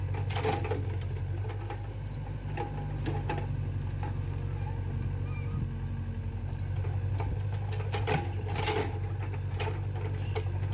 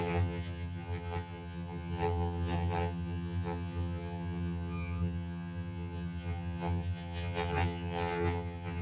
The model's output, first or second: second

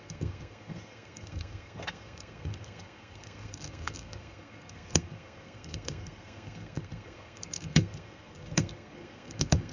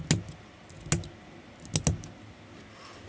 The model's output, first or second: first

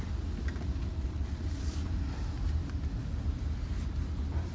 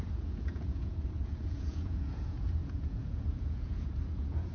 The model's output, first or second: second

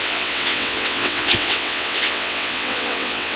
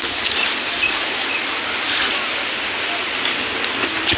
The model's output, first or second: first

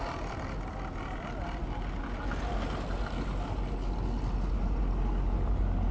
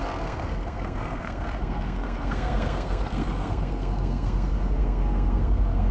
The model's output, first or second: second